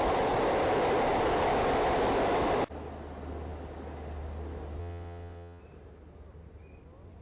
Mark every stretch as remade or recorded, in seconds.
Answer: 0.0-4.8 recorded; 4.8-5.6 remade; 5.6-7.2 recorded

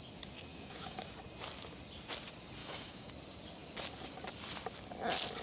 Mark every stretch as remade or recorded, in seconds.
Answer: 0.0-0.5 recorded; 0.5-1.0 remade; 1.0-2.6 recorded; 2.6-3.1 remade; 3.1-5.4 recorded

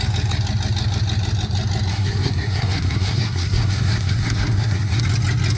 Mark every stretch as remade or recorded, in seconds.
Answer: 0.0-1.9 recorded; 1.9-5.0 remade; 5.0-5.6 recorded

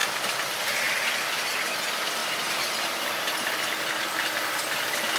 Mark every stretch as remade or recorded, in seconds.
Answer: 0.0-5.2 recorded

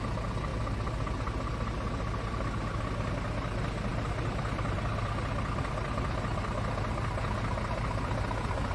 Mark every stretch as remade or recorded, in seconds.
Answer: 0.0-8.7 recorded

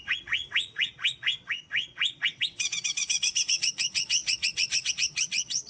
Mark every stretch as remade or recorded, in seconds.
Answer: 0.0-5.7 remade

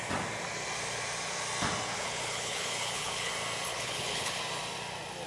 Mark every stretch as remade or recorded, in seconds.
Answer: 0.0-1.9 recorded; 1.9-3.3 remade; 3.3-3.7 recorded; 3.7-4.4 remade; 4.4-5.3 recorded